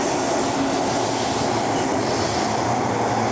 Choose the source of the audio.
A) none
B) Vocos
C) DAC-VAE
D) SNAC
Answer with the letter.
A